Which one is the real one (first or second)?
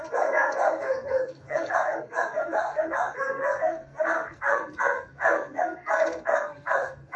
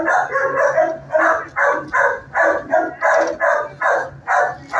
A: second